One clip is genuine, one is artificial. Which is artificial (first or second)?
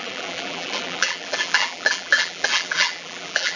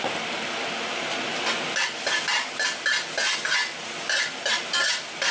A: first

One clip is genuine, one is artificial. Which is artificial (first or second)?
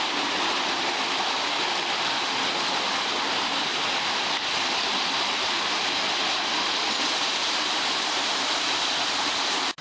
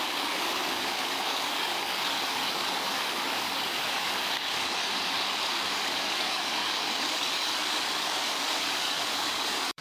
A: second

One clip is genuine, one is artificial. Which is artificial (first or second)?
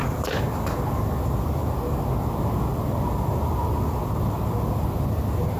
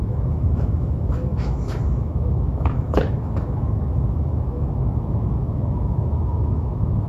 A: second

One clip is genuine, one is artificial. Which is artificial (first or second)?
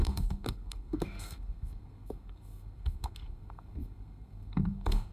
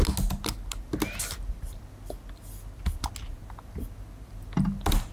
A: first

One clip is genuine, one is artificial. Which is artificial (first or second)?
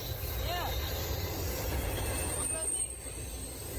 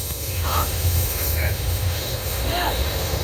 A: second